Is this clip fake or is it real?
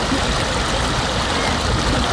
real